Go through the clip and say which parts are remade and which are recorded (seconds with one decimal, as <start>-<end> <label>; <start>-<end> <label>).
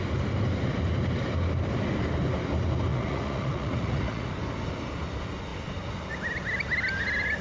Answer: 0.0-2.9 recorded; 2.9-4.3 remade; 4.3-7.4 recorded